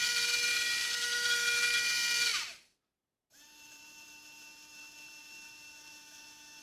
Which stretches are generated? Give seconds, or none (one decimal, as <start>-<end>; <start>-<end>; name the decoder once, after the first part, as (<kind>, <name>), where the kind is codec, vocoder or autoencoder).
0.0-6.6 (vocoder, BigVGAN v2)